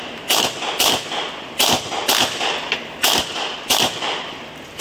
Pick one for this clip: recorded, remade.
recorded